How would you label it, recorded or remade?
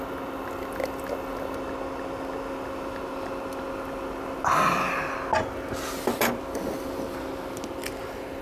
recorded